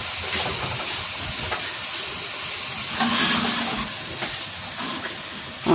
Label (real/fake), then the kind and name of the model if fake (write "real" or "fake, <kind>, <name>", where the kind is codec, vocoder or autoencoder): real